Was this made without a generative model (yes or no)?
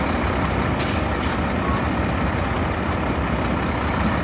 yes